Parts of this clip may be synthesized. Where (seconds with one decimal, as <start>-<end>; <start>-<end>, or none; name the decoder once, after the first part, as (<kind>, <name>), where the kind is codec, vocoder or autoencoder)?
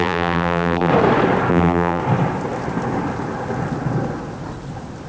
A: 0.0-0.9 (vocoder, BigVGAN v2); 1.5-2.0